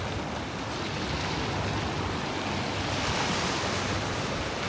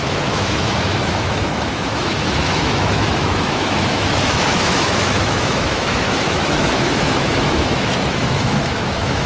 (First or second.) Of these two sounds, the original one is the first